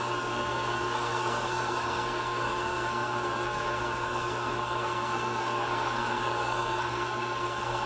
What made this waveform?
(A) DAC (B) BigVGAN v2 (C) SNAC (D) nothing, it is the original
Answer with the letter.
C